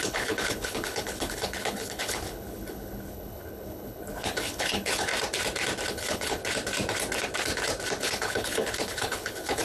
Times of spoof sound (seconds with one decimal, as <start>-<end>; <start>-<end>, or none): 0.0-5.1; 5.9-6.4; 8.0-9.6